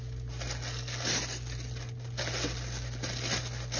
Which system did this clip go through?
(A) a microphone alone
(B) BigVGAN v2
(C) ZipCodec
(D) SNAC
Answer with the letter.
A